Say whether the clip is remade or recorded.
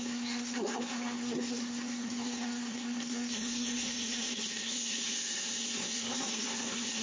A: remade